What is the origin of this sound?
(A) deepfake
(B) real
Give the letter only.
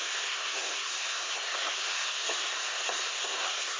A